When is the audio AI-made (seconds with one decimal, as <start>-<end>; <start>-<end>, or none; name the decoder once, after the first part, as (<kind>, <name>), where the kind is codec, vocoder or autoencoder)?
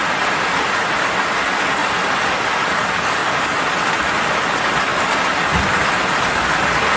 none